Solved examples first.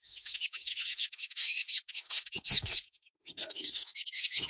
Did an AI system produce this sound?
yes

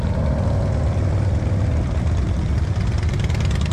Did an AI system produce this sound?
no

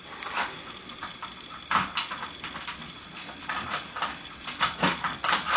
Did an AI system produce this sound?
no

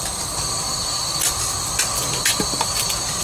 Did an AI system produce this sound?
no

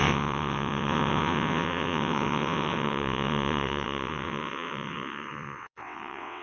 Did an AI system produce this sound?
yes